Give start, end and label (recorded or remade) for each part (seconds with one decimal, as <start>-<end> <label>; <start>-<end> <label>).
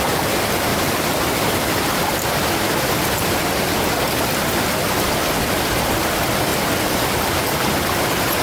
0.0-0.7 recorded; 0.7-3.4 remade; 3.4-8.4 recorded